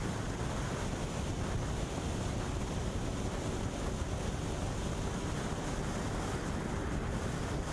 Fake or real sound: real